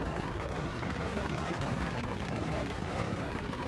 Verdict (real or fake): fake